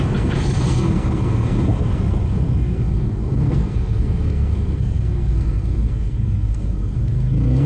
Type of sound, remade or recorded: remade